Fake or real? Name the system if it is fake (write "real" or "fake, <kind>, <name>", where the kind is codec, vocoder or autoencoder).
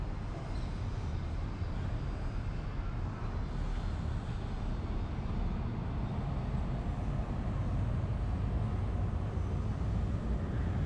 real